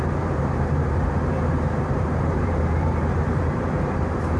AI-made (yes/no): yes